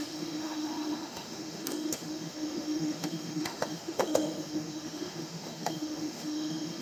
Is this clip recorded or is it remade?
remade